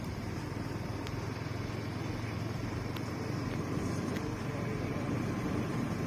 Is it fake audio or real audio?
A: real